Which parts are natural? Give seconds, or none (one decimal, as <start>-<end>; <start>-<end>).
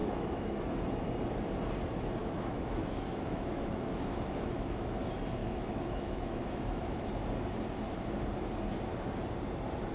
0.6-2.2; 5.0-5.4; 7.1-9.9